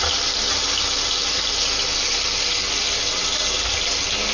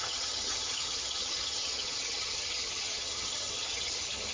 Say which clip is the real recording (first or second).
first